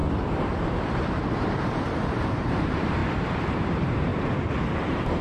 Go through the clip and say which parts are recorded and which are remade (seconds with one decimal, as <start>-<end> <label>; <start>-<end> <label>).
0.0-1.2 recorded; 1.2-3.0 remade; 3.0-3.5 recorded; 3.5-4.1 remade; 4.1-4.6 recorded; 4.6-5.2 remade